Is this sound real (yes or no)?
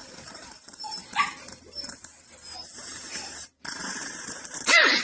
no